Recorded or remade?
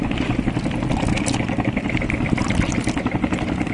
recorded